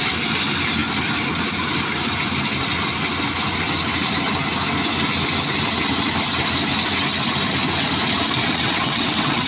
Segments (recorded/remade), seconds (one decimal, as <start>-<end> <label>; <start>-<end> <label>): 0.0-8.4 recorded; 8.4-9.5 remade